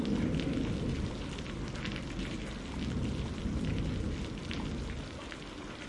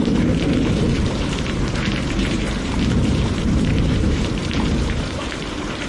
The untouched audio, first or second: first